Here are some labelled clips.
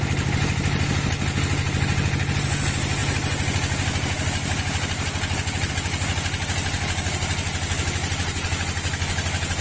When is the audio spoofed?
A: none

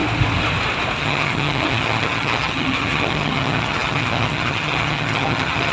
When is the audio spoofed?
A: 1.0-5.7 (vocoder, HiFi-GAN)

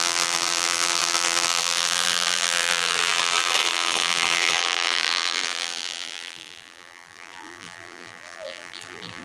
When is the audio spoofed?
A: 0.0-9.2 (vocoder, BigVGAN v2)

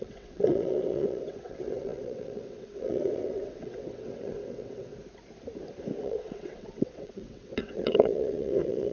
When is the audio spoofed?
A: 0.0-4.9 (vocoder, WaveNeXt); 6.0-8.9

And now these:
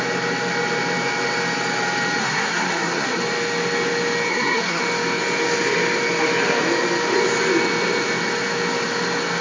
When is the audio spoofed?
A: 2.2-3.2 (codec, SNAC); 4.3-4.8

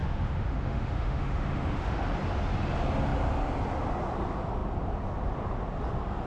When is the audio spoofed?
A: 0.0-2.0 (autoencoder, DAC-VAE)

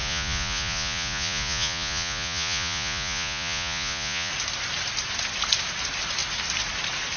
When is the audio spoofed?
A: 0.0-4.3 (vocoder, Vocos)